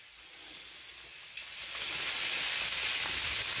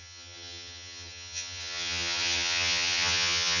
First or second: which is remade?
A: second